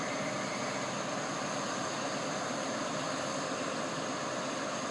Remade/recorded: recorded